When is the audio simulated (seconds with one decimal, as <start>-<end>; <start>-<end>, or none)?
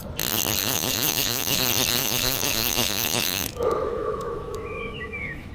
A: 0.6-1.6; 2.0-5.5